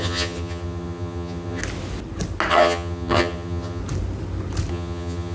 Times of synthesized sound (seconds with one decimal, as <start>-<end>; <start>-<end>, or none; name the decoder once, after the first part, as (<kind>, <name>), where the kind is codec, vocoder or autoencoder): 0.0-1.6 (vocoder, HiFi-GAN); 2.5-3.8; 4.7-5.3